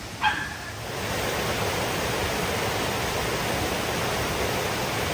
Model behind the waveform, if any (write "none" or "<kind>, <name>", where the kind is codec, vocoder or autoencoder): none